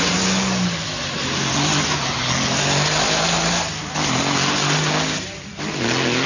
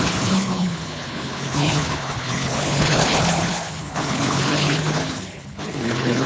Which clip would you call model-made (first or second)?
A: second